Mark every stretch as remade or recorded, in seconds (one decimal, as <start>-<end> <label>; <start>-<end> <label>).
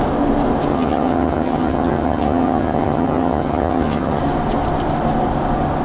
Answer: 0.0-0.7 recorded; 0.7-4.2 remade; 4.2-5.8 recorded